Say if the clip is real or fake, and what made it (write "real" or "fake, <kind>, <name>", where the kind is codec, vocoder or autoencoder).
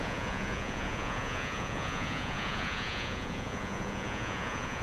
fake, vocoder, Vocos